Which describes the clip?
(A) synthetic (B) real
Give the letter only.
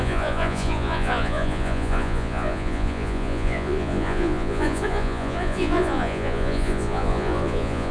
A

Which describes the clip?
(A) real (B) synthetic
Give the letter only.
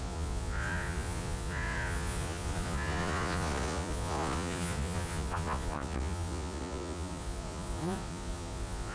B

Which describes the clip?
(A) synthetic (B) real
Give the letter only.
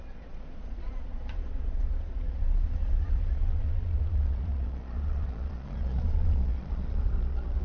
A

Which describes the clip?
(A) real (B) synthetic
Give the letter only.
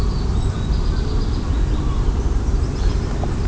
A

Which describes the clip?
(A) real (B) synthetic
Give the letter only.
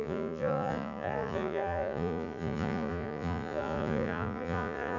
B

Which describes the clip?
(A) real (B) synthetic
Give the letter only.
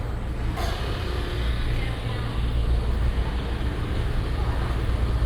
A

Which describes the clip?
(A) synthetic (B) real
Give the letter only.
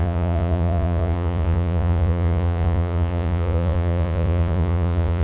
A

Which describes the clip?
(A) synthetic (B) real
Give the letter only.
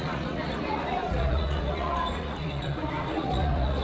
A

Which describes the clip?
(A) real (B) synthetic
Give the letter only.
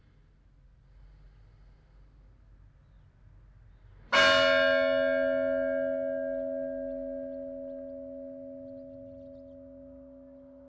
A